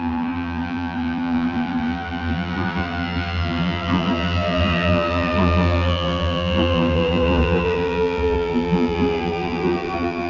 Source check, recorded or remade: remade